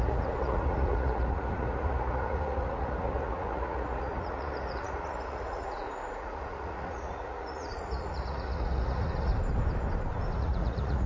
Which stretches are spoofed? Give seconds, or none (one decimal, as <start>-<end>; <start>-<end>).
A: 0.0-9.3; 10.4-11.1